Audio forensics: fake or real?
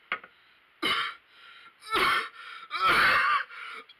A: real